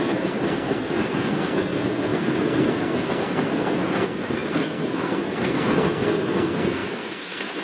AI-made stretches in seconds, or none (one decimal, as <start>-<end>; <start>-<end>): 0.0-7.6